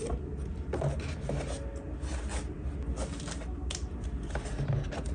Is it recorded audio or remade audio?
recorded